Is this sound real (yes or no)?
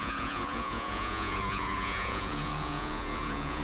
no